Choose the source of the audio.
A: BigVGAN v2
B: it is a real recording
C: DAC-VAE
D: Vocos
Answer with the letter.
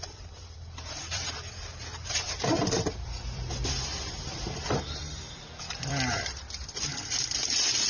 A